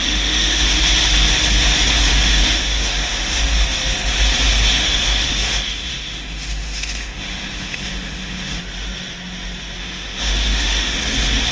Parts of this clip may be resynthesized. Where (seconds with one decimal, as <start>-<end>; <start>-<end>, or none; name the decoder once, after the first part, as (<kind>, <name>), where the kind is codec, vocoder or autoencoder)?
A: 0.0-0.8 (autoencoder, DAC-VAE); 2.1-3.4; 4.8-8.6; 9.8-11.0